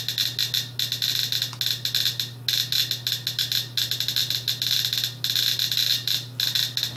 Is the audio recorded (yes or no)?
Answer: yes